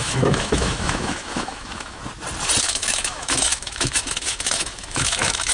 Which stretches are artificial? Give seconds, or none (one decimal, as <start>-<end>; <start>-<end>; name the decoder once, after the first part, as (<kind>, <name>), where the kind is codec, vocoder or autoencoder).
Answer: 0.0-2.0 (autoencoder, DAC-VAE); 2.6-5.5